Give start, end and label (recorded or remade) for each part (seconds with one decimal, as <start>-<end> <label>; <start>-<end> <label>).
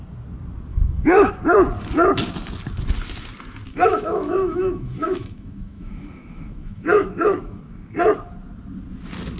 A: 0.0-0.7 recorded; 0.7-1.3 remade; 1.3-3.7 recorded; 3.7-7.6 remade; 7.6-9.4 recorded